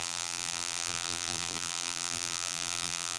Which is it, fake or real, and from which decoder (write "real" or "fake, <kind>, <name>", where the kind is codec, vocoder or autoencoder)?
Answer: fake, vocoder, BigVGAN v2